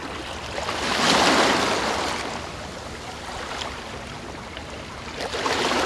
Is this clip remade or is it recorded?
recorded